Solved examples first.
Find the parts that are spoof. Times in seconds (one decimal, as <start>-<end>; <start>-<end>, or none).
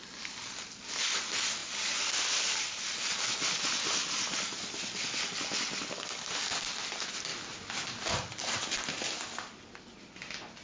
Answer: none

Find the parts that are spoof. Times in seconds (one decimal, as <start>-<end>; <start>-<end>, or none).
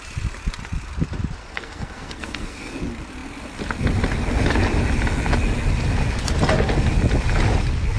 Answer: 1.4-2.8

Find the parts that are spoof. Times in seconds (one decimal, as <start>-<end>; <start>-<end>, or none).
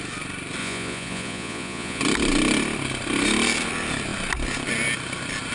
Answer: 0.6-2.0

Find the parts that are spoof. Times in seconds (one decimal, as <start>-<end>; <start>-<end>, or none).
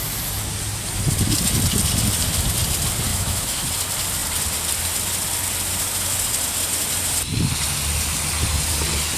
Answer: 3.1-3.7